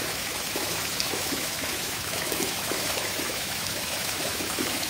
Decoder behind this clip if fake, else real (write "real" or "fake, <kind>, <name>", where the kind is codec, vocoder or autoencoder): fake, autoencoder, DAC-VAE